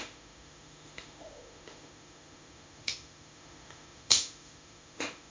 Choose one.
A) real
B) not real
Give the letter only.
B